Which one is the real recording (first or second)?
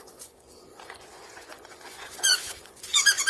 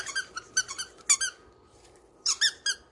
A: second